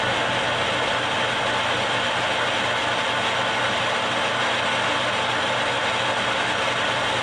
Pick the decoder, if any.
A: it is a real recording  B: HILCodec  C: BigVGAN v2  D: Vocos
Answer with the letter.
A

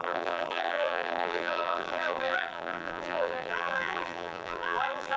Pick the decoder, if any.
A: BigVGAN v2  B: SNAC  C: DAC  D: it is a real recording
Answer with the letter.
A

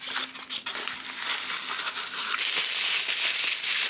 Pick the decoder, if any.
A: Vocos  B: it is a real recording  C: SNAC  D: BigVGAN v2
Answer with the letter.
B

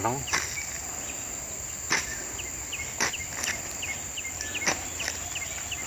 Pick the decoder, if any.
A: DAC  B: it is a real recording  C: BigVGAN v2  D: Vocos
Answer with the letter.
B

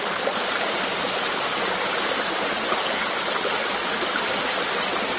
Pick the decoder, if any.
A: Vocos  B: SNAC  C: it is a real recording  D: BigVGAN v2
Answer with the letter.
C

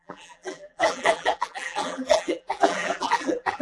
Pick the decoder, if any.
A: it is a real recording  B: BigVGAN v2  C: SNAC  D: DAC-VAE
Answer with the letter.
B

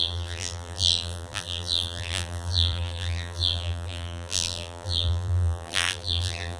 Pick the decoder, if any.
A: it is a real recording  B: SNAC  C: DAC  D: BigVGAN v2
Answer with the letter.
D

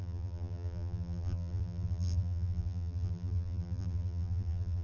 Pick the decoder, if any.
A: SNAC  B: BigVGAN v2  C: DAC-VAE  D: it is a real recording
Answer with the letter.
B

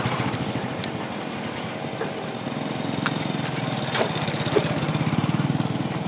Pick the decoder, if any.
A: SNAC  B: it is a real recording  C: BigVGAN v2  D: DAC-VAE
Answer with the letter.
C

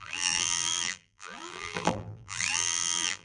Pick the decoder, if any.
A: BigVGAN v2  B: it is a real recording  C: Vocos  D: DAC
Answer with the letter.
A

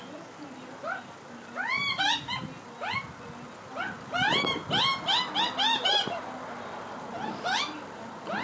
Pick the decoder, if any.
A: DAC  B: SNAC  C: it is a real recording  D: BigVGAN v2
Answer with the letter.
C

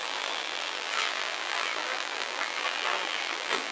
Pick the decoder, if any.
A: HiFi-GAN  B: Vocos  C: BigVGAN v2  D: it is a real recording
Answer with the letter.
C